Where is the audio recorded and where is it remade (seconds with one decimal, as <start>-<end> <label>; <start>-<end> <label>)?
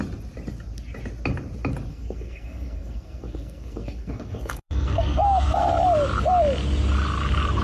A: 0.0-1.9 recorded; 1.9-5.7 remade; 5.7-7.6 recorded